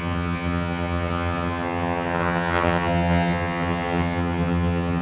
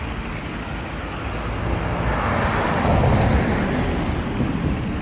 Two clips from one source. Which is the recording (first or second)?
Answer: second